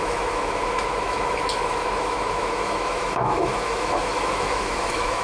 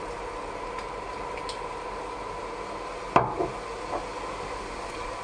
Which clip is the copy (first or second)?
first